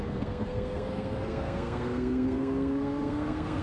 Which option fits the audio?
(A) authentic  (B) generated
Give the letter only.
B